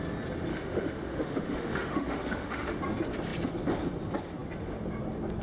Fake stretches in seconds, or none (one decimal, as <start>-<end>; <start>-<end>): 0.5-2.8